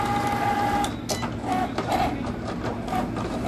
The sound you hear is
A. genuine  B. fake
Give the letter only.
A